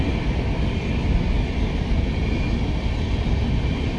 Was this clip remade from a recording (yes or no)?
no